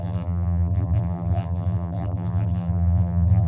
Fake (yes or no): yes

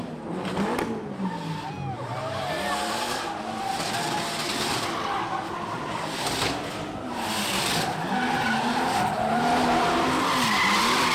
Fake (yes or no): no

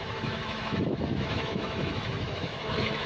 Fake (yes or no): yes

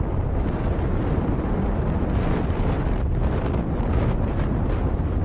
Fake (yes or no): no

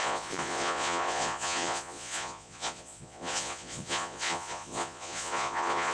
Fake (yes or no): yes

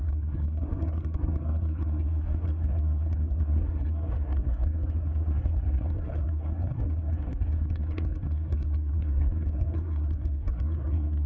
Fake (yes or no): yes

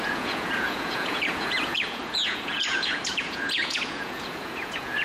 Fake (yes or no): yes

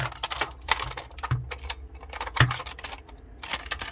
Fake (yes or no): no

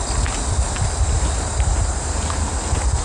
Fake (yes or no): no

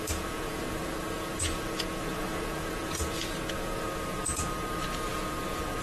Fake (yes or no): yes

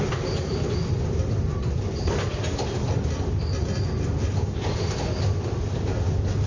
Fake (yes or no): no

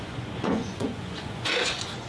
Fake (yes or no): yes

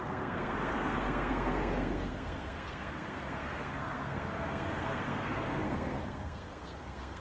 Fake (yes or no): yes